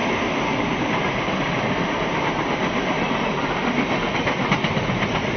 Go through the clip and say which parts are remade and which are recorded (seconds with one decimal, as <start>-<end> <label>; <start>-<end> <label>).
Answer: 0.0-5.4 recorded